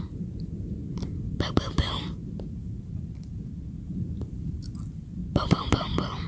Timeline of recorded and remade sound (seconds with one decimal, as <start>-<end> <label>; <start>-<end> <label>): 0.0-0.8 recorded; 0.8-4.6 remade; 4.6-5.2 recorded; 5.2-5.8 remade; 5.8-6.3 recorded

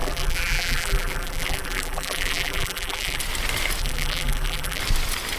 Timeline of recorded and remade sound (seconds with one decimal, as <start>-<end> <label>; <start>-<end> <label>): 0.0-3.2 remade; 3.2-3.8 recorded; 3.8-4.8 remade; 4.8-5.4 recorded

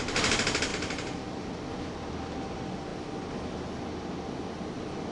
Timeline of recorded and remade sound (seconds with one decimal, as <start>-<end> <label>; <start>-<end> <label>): 0.0-0.7 recorded; 0.7-1.8 remade; 1.8-5.1 recorded

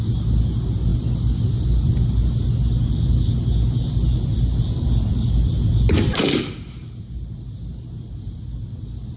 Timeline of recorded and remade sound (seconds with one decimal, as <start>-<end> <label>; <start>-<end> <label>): 0.0-9.2 recorded

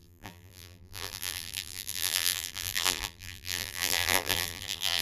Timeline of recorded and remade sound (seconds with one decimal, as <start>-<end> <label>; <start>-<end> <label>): 0.0-5.0 remade